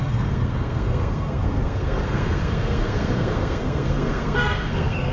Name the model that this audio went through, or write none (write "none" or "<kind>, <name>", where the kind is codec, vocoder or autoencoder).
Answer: codec, SNAC